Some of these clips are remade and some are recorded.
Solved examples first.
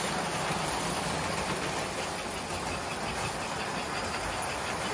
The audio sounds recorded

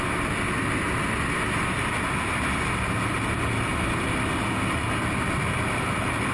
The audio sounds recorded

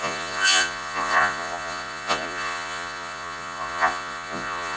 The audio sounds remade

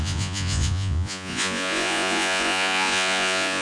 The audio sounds remade